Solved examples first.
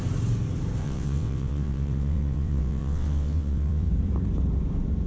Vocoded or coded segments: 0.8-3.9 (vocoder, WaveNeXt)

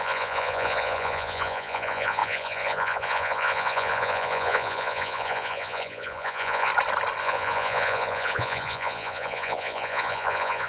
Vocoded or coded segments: 0.0-6.7 (vocoder, Vocos); 7.2-10.7

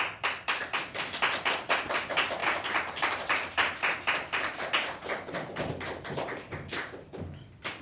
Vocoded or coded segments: 0.0-0.6 (vocoder, BigVGAN v2); 1.4-7.8